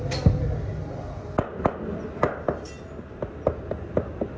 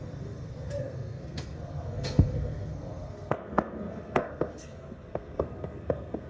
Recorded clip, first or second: first